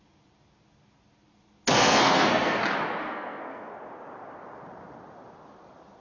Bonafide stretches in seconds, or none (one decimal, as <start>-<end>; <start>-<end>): 0.0-1.7; 2.6-3.0; 3.7-6.0